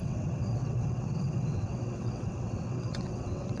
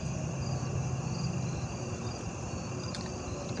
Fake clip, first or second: first